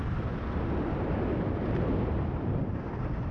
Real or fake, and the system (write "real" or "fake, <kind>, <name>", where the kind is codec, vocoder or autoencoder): real